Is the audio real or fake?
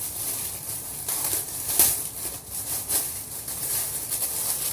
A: fake